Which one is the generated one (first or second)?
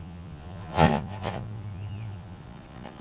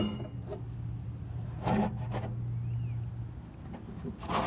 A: first